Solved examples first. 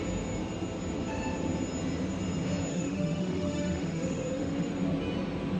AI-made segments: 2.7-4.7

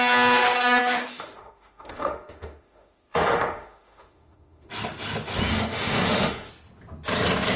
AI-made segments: 0.8-4.7; 5.5-6.5

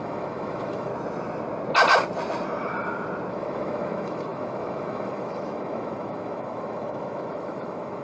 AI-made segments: 0.0-0.9; 3.3-8.0

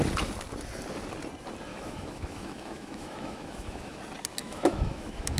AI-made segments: 1.7-4.0; 4.4-5.4

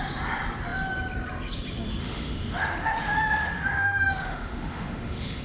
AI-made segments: 2.0-5.4

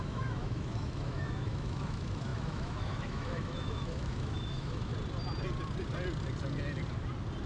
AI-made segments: 0.0-4.9